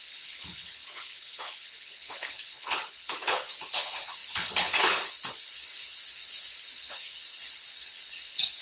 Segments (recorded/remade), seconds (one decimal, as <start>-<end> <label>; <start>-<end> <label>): 0.0-8.6 remade